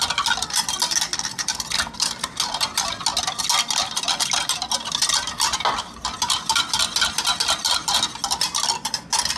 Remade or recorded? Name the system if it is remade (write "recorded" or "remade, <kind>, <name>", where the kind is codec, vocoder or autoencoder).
recorded